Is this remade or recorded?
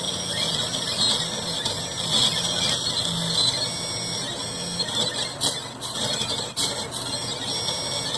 recorded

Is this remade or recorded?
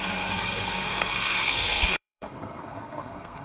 remade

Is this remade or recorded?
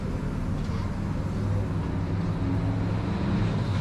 recorded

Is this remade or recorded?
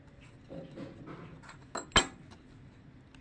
recorded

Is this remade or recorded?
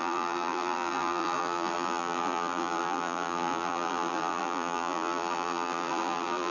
remade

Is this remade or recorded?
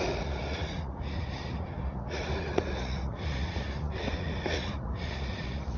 remade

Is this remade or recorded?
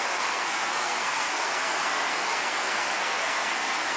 remade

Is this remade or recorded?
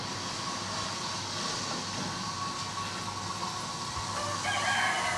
recorded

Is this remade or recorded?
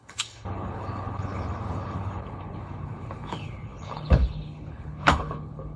remade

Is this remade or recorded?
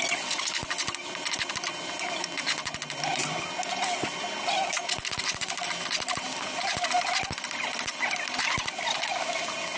recorded